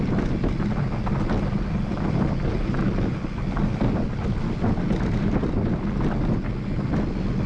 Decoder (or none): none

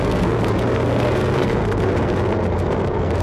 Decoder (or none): codec, SNAC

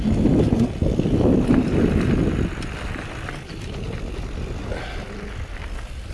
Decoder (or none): none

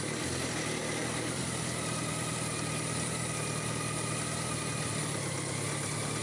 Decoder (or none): none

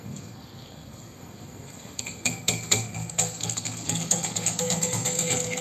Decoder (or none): codec, SNAC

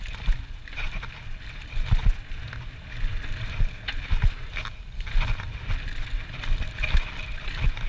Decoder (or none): none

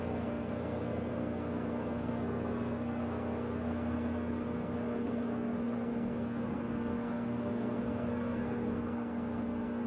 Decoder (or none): codec, SNAC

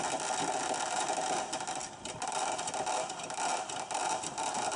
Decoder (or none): none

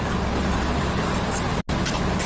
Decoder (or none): none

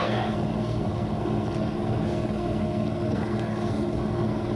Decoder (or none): codec, SNAC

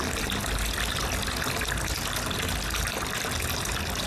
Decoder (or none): none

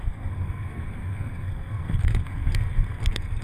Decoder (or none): codec, SNAC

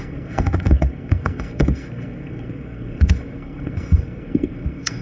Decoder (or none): codec, SNAC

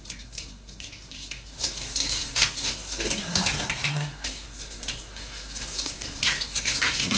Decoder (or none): codec, SNAC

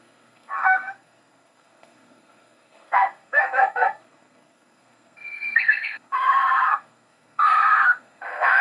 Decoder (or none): codec, SNAC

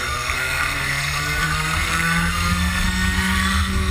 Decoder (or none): codec, SNAC